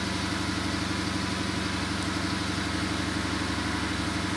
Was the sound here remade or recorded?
recorded